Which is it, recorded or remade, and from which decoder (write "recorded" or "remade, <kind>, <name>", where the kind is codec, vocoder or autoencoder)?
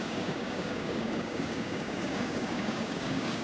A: remade, codec, DAC